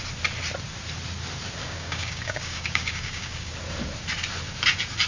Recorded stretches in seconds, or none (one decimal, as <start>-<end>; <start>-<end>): 0.0-1.6; 3.5-5.1